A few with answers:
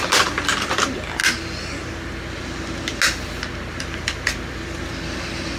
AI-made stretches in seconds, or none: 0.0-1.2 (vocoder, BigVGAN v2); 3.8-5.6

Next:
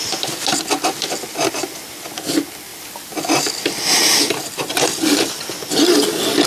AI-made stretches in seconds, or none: none

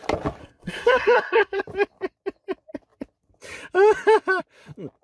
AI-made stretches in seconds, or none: 0.4-1.6 (codec, SNAC)